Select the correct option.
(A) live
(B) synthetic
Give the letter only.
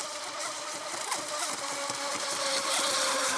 B